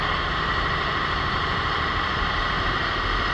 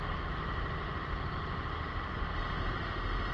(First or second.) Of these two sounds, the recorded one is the second